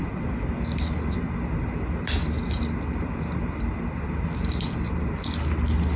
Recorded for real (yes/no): yes